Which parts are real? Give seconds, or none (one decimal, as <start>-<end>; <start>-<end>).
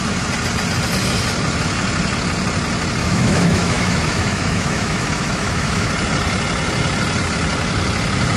0.0-3.0; 5.9-8.4